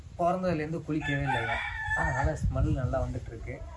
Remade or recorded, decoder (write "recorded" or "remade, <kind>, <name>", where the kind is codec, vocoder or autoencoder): recorded